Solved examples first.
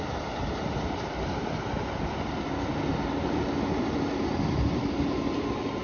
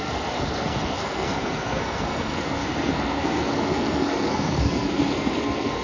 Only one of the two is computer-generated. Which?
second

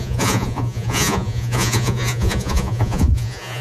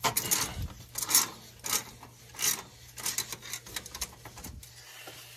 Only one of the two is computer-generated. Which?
first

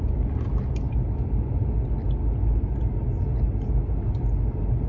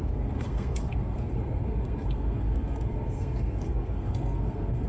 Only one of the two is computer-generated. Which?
second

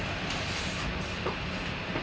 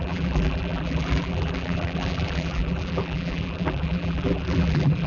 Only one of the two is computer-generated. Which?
second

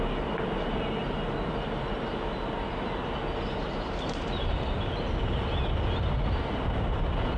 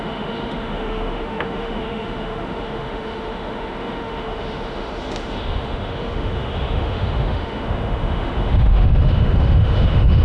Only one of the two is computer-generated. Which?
second